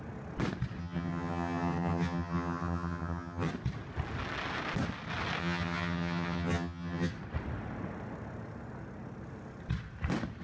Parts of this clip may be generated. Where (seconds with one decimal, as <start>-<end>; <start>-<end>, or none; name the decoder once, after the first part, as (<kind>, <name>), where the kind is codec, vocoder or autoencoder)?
0.8-3.5 (vocoder, HiFi-GAN); 5.4-7.1